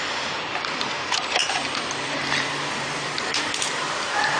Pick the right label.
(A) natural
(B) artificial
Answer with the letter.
B